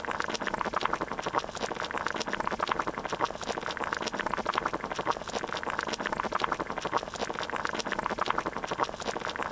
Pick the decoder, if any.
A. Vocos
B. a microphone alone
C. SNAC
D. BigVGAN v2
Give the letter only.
B